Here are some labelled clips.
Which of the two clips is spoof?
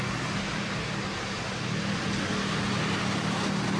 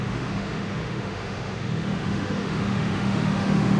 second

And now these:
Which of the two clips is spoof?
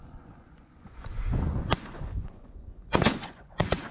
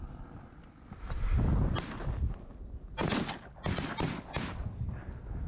first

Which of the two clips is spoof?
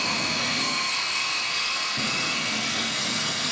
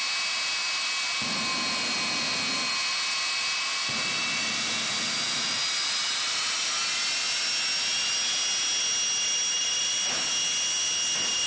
first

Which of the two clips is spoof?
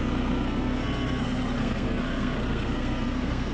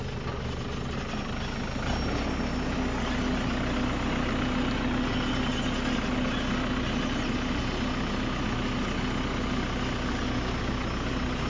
first